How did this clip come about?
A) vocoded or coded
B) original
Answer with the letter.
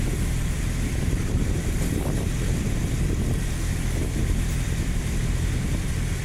A